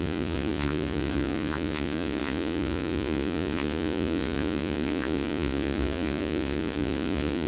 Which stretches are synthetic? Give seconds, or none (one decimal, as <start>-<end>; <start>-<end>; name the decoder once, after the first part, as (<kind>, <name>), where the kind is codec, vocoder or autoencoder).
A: 0.0-7.5 (vocoder, Vocos)